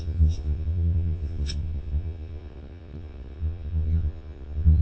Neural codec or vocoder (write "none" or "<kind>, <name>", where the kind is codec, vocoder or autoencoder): vocoder, Vocos